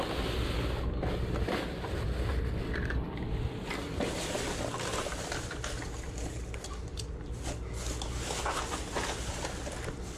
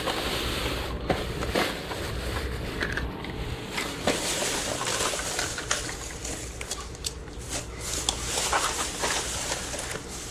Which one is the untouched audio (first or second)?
first